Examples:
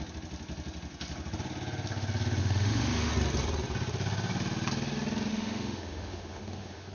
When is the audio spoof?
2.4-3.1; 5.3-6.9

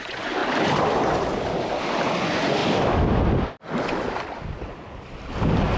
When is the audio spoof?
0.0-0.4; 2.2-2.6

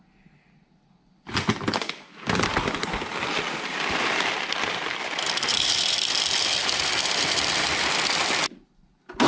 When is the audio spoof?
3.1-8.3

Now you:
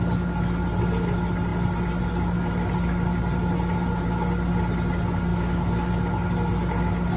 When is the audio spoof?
5.3-5.9